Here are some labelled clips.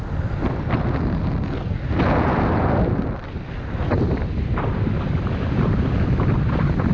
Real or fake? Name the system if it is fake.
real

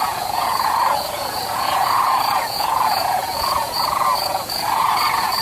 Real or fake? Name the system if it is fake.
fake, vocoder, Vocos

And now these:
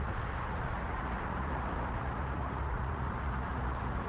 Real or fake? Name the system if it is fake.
fake, vocoder, Vocos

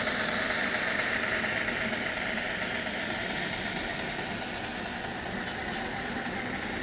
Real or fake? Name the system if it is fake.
real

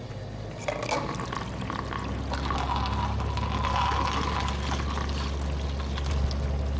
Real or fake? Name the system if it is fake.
real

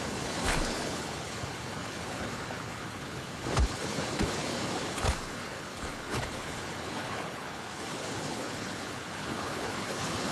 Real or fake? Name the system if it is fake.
fake, codec, HILCodec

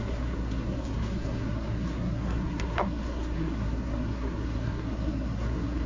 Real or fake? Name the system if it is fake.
fake, codec, SNAC